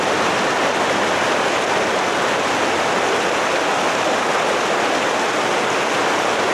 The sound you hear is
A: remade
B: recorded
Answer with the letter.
B